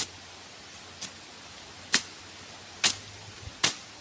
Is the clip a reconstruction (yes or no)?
no